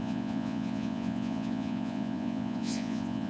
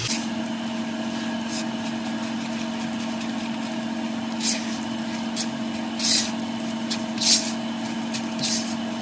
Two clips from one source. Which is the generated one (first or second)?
first